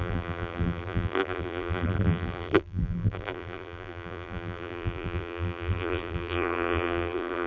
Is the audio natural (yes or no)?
no